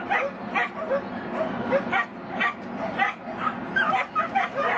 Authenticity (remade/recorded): recorded